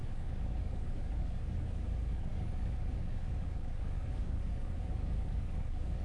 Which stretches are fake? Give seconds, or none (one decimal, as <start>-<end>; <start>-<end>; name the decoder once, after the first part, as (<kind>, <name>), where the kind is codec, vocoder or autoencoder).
0.0-6.0 (codec, DAC)